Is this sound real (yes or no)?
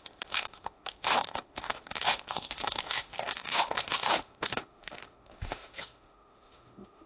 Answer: no